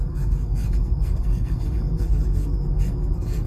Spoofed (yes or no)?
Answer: yes